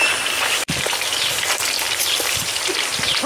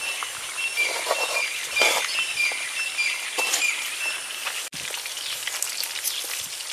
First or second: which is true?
second